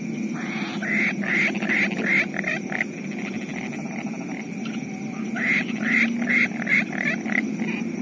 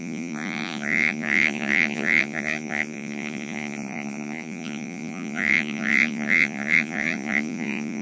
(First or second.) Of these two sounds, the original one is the first